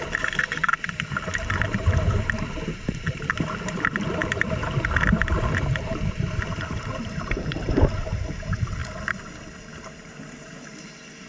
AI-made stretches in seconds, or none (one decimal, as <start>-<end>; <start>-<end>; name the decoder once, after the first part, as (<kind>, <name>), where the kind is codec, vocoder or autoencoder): 0.0-8.8 (vocoder, BigVGAN v2); 9.6-11.3